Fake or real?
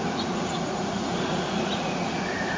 fake